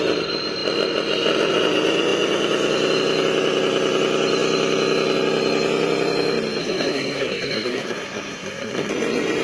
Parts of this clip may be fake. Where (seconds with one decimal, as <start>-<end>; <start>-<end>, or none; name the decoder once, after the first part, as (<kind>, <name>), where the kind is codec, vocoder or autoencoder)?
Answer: 6.6-8.9 (codec, SNAC)